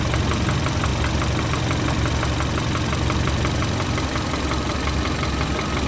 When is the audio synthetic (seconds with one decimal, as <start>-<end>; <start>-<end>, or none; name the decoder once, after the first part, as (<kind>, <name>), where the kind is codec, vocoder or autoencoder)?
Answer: none